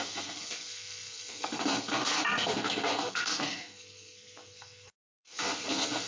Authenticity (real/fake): fake